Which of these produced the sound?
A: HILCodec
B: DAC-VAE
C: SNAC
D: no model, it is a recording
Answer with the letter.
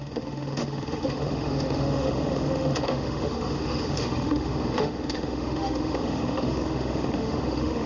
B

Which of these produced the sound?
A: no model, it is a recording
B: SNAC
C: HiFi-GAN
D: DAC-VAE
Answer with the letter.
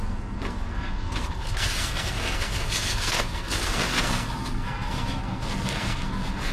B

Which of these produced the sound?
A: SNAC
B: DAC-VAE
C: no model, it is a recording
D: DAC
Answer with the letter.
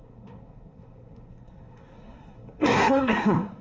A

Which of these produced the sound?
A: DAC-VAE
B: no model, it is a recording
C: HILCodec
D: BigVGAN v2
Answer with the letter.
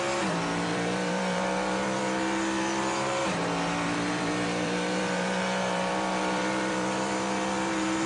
D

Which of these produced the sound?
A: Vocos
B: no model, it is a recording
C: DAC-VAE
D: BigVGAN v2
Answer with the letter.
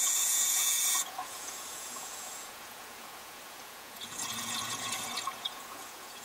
A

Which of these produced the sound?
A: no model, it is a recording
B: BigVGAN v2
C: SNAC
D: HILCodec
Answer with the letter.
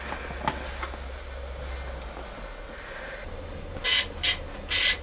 A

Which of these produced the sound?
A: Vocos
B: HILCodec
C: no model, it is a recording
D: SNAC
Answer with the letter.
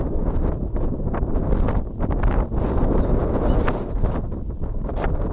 C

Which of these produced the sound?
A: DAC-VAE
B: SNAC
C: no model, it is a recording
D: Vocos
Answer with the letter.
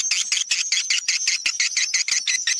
C